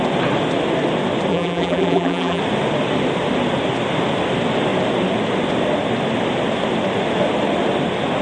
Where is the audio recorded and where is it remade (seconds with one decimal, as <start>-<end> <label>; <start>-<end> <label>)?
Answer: 0.0-1.3 recorded; 1.3-2.4 remade; 2.4-8.2 recorded